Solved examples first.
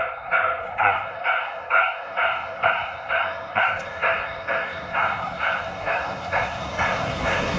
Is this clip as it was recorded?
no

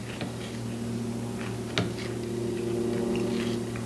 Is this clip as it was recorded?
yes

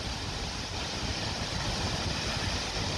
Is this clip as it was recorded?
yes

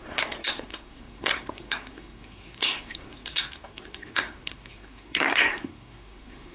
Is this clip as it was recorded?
no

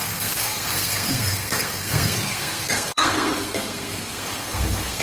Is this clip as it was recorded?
no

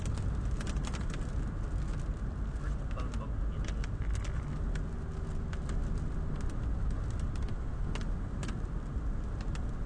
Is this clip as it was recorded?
yes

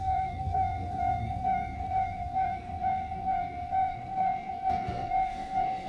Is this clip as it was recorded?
no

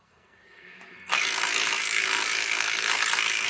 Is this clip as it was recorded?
no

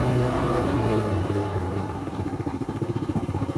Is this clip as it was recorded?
no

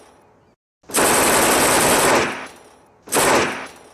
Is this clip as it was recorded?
yes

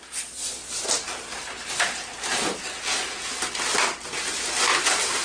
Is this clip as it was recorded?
yes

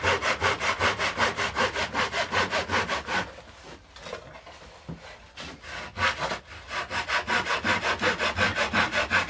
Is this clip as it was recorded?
yes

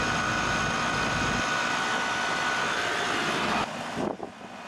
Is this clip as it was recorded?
yes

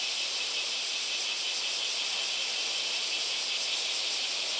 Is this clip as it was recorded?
yes